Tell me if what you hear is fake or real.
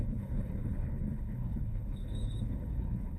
fake